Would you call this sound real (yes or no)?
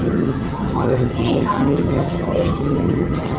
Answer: no